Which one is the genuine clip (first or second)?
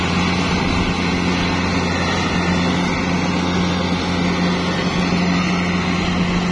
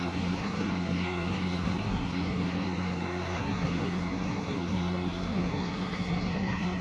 first